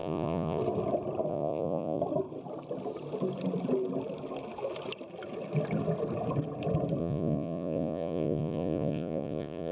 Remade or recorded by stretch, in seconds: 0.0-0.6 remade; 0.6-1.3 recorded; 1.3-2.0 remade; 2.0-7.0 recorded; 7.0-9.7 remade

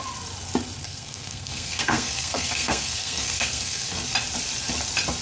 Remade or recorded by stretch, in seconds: 0.0-0.8 recorded; 0.8-3.9 remade; 3.9-5.2 recorded

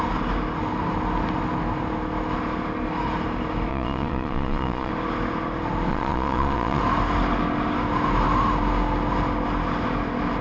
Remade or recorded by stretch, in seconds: 0.0-3.7 recorded; 3.7-4.9 remade; 4.9-5.9 recorded; 5.9-6.8 remade; 6.8-10.4 recorded

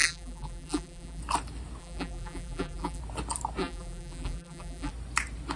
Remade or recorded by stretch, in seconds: 0.0-1.2 remade; 1.2-1.8 recorded; 1.8-3.0 remade; 3.0-3.6 recorded; 3.6-4.9 remade; 4.9-5.6 recorded

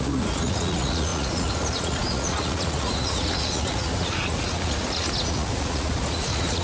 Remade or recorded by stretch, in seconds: 0.0-6.6 remade

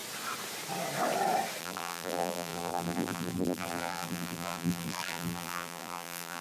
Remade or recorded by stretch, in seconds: 0.0-1.6 recorded; 1.6-6.4 remade